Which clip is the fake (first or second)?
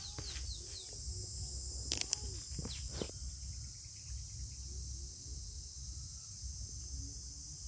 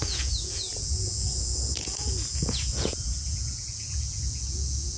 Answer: second